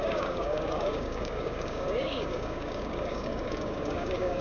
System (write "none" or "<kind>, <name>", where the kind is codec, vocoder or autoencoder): codec, DAC